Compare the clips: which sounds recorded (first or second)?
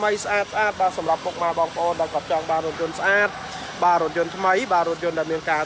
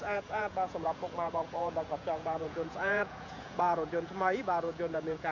first